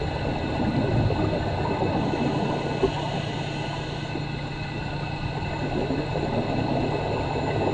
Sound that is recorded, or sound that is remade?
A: recorded